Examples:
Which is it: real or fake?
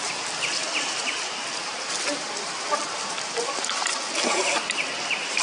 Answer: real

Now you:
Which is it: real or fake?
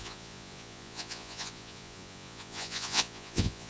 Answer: fake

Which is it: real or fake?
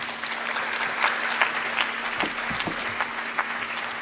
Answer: real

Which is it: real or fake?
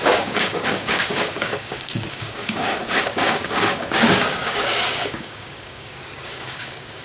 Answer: fake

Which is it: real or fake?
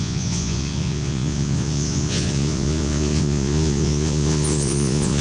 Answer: fake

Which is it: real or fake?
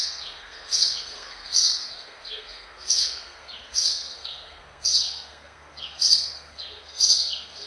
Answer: fake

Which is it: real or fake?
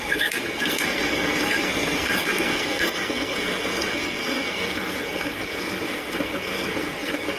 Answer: fake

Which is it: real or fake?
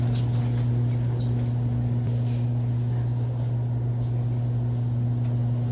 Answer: real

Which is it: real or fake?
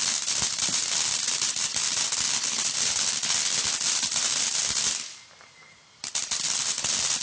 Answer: real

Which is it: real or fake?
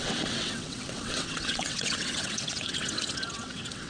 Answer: fake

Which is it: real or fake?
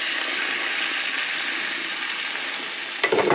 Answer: real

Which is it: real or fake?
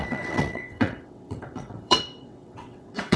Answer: fake